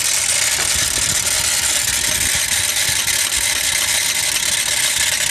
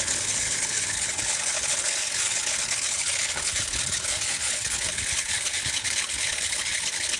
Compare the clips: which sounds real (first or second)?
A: first